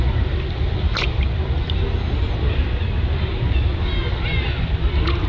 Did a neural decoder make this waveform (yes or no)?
no